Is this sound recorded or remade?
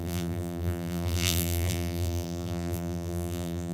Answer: remade